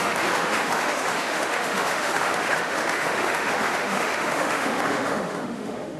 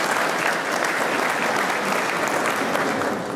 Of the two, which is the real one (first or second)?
second